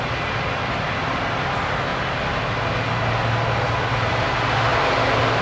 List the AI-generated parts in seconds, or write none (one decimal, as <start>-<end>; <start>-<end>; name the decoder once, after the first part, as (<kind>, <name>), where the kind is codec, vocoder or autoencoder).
none